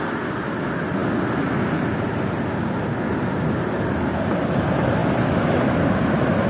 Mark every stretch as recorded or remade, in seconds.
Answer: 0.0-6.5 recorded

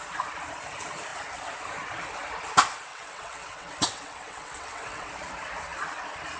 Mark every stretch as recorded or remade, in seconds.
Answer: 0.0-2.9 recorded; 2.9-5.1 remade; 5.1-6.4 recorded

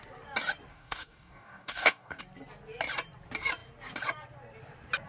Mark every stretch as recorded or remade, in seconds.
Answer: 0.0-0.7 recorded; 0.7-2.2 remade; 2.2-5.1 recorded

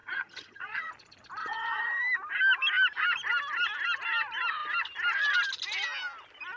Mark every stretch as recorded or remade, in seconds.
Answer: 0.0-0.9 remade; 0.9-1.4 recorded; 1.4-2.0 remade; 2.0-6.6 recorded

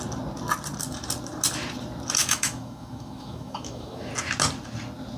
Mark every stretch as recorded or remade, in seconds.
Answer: 0.0-2.2 recorded; 2.2-4.1 remade; 4.1-5.2 recorded

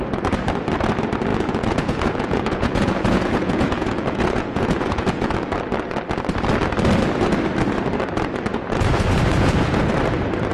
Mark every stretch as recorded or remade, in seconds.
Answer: 0.0-1.3 recorded; 1.3-5.6 remade; 5.6-8.5 recorded; 8.5-9.9 remade; 9.9-10.5 recorded

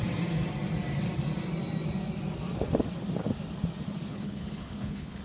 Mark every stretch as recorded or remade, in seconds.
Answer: 0.0-4.1 recorded; 4.1-5.2 remade

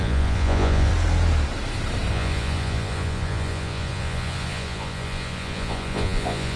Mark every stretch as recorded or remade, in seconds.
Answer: 0.0-0.9 remade; 0.9-2.1 recorded; 2.1-6.6 remade